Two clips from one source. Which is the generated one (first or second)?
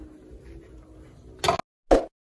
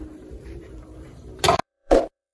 second